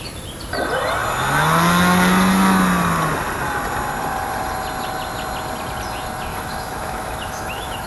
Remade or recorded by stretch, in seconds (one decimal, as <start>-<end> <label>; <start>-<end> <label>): 0.0-6.3 recorded; 6.3-7.9 remade